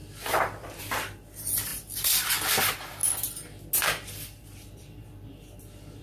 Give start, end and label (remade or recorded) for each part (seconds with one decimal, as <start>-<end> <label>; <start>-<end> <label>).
0.0-3.0 remade; 3.0-4.1 recorded; 4.1-6.0 remade